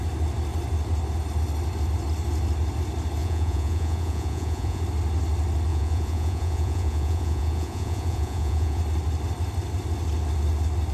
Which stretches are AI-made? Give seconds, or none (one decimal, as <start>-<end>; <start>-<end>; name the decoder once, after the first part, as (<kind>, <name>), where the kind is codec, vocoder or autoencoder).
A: 3.2-4.8 (vocoder, Vocos); 5.7-8.8